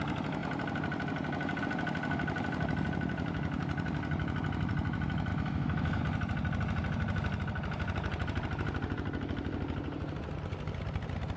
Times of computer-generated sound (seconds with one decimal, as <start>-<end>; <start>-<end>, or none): 5.3-6.0